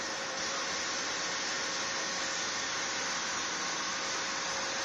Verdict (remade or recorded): recorded